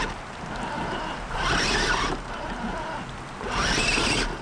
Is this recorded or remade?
recorded